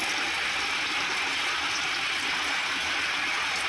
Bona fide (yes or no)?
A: yes